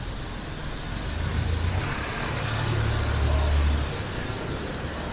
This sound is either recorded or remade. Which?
recorded